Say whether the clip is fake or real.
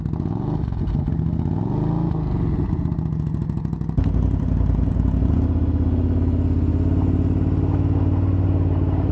real